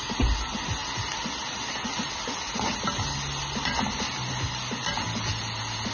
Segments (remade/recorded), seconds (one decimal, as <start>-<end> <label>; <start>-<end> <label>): 0.0-5.9 recorded